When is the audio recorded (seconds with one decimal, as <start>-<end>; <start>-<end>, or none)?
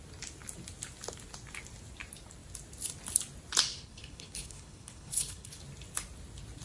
0.0-3.7; 5.6-6.6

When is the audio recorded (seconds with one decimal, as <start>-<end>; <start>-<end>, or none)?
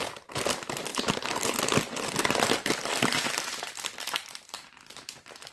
0.0-5.5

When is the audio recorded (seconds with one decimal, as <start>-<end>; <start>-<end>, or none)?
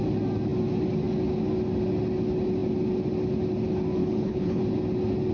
0.0-4.0; 4.6-5.3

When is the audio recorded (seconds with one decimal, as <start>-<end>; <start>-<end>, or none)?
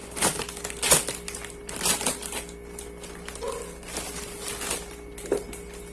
0.0-5.9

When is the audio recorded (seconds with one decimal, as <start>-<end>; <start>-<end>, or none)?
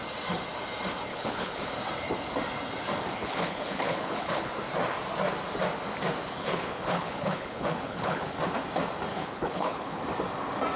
0.0-1.1; 1.7-3.2; 4.5-6.2; 8.3-9.1; 10.0-10.8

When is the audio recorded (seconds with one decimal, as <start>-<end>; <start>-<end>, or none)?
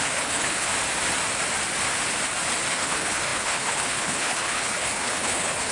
0.7-2.7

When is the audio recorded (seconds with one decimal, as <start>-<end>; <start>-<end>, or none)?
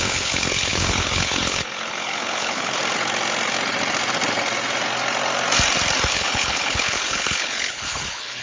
2.8-6.1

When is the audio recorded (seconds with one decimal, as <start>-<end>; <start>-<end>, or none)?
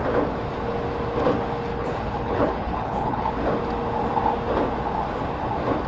0.0-1.7; 3.3-5.9